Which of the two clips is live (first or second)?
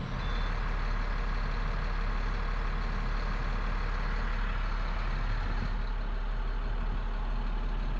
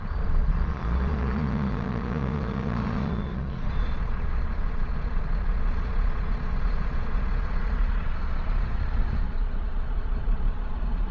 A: first